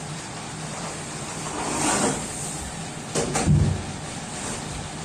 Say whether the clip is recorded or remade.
remade